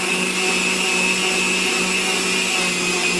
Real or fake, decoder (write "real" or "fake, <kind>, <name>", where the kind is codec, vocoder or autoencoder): real